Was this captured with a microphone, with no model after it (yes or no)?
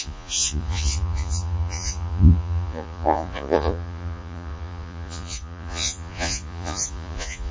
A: no